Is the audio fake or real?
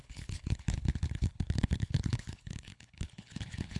fake